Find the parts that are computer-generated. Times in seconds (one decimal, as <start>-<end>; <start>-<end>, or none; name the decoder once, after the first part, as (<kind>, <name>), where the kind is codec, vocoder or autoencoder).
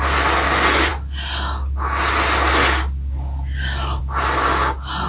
none